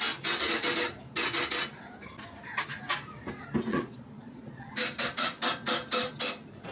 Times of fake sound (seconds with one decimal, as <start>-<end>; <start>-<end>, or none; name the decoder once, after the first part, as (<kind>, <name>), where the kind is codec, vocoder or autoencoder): 3.7-4.7 (vocoder, Vocos)

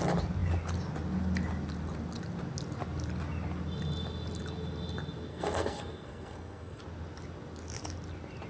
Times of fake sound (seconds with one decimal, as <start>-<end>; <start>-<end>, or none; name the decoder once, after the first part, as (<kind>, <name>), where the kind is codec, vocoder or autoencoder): 5.3-6.8 (codec, SNAC)

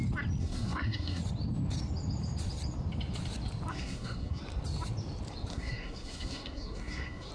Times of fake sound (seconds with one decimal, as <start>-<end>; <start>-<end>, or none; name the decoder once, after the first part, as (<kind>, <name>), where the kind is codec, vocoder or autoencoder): 0.4-1.2 (codec, SNAC); 3.7-4.4; 5.5-7.3

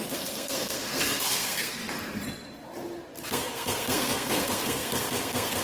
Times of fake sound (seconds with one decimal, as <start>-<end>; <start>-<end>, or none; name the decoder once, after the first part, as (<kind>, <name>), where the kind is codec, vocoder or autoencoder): 0.0-1.8 (codec, SNAC); 3.3-5.6

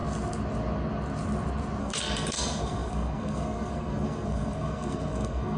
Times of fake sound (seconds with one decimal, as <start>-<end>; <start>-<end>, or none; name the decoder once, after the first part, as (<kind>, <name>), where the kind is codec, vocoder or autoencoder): 1.8-5.6 (codec, SNAC)